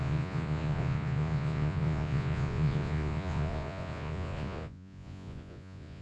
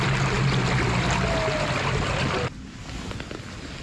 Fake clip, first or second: first